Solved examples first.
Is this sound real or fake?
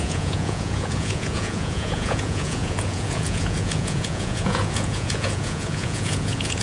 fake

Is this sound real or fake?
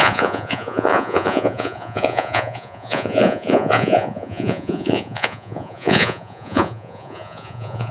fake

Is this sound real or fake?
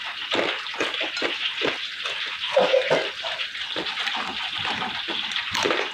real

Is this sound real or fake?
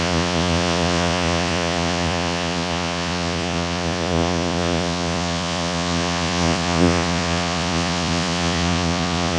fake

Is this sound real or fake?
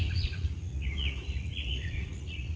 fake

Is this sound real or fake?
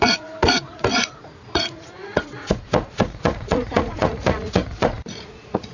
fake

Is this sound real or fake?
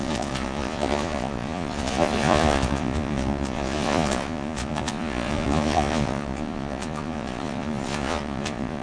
fake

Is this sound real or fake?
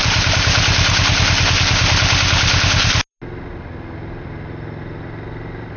real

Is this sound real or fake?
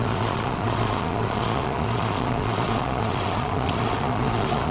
fake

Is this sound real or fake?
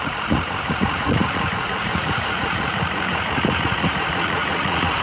fake